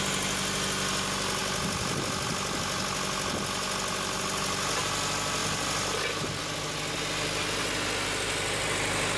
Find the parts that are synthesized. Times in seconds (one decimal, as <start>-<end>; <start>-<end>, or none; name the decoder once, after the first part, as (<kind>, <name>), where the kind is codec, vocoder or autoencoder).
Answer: none

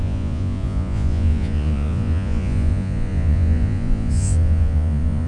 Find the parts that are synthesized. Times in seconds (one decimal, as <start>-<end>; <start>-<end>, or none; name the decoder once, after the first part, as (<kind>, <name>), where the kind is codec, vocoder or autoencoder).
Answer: 0.0-5.3 (vocoder, Vocos)

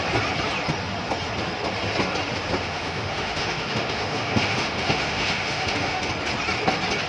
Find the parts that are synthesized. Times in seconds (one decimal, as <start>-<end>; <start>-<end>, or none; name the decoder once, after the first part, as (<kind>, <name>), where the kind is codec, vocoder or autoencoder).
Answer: 2.6-6.1 (autoencoder, DAC-VAE)

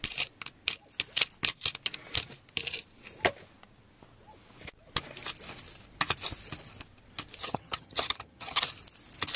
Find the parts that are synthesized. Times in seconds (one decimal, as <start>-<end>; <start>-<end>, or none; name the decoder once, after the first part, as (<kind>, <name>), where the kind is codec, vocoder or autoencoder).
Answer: 7.4-8.6 (vocoder, HiFi-GAN)

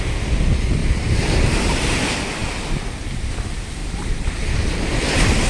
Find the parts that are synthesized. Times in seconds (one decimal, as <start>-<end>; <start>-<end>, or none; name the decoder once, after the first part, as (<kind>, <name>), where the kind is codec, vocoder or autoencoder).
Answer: 0.8-2.0 (vocoder, BigVGAN v2); 3.8-4.8